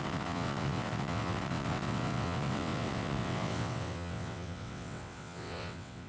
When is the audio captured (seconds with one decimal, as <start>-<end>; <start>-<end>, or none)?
none